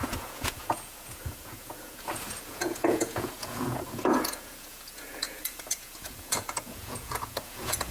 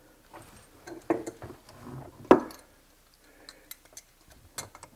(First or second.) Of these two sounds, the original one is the second